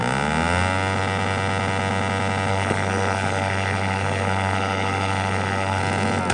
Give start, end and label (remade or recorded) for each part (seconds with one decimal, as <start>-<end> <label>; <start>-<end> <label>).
0.0-2.5 recorded; 2.5-5.8 remade; 5.8-6.3 recorded